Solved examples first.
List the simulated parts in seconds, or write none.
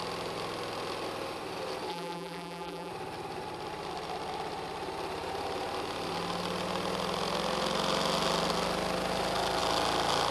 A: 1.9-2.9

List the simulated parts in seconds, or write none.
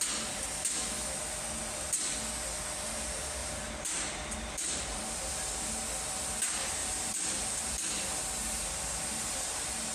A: 3.4-5.0; 6.8-8.2